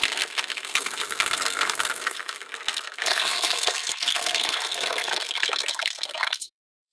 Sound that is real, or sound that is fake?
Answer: fake